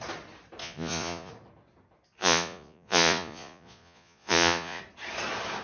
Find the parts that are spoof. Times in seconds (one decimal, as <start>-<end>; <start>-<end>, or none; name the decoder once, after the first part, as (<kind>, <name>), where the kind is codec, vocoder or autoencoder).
0.6-1.3 (vocoder, Vocos); 2.2-4.8